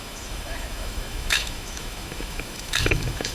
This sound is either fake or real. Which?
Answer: fake